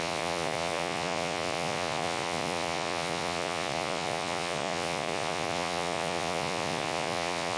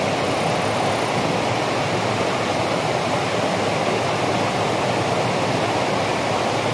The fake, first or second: first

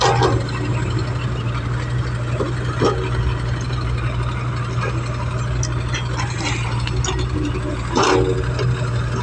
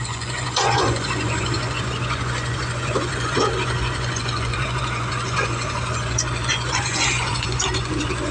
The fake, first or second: second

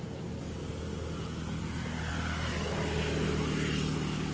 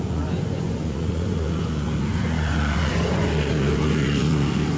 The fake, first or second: second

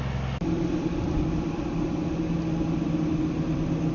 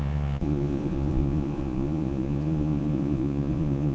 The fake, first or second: second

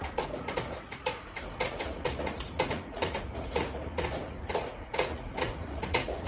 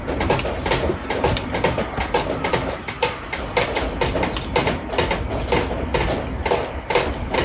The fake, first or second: first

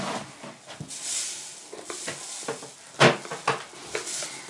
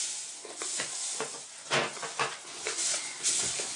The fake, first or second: second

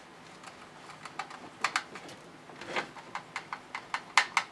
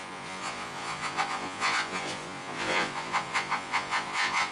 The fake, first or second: second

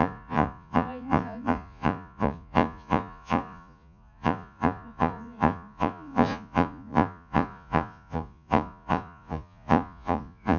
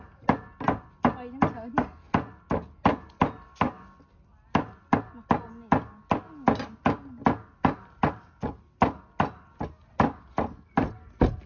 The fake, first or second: first